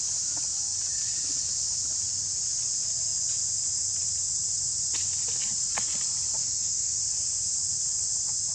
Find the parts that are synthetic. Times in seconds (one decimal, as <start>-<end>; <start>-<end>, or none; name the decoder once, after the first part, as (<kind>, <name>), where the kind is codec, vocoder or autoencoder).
6.4-7.0 (autoencoder, DAC-VAE)